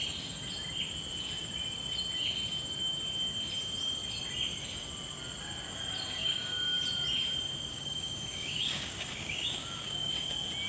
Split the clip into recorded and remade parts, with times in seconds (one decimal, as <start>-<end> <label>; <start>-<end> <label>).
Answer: 0.0-6.2 recorded; 6.2-6.8 remade; 6.8-7.7 recorded; 7.7-10.1 remade; 10.1-10.7 recorded